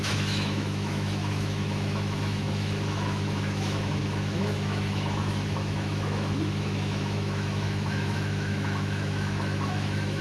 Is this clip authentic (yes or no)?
no